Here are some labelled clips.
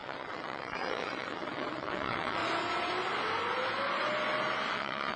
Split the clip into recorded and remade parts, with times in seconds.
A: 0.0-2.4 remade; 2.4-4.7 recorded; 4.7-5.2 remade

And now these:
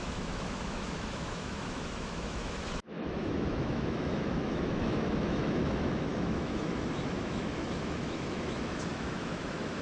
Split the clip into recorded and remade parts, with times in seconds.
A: 0.0-9.8 remade

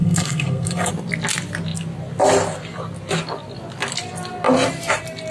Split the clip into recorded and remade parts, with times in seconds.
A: 0.0-0.9 remade; 0.9-5.3 recorded

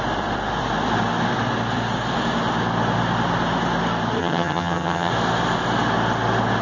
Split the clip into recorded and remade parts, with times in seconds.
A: 0.0-4.2 recorded; 4.2-5.1 remade; 5.1-6.6 recorded

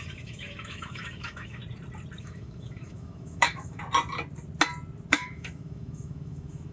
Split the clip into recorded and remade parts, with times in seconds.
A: 0.0-1.6 remade; 1.6-2.2 recorded; 2.2-3.8 remade; 3.8-5.1 recorded; 5.1-6.7 remade

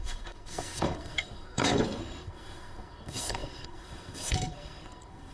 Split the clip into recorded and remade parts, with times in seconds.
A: 0.0-5.3 remade

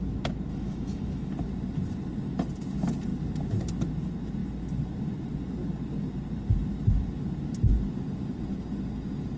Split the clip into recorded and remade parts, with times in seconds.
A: 0.0-0.5 recorded; 0.5-1.3 remade; 1.3-9.4 recorded